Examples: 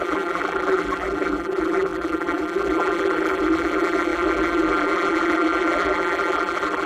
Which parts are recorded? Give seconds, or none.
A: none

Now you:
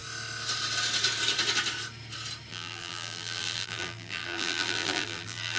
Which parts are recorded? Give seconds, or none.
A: 0.0-2.5